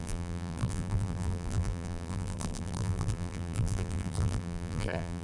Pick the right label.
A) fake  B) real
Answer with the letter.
A